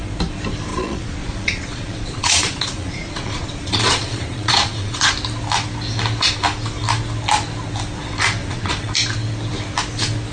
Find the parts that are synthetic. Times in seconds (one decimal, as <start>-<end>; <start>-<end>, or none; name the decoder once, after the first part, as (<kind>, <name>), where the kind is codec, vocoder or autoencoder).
0.7-5.1 (vocoder, Vocos); 8.4-8.9